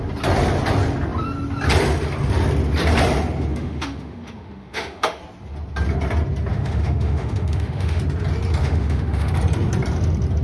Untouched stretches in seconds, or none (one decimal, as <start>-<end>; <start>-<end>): 0.0-3.5; 5.2-6.5; 8.0-8.6; 9.3-10.4